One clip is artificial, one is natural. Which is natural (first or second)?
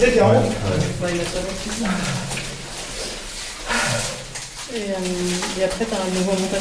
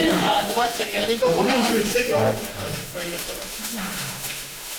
first